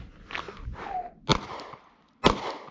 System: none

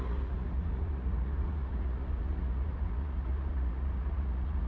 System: vocoder, Vocos